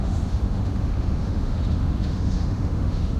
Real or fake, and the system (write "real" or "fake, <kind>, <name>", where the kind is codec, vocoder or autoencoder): fake, autoencoder, DAC-VAE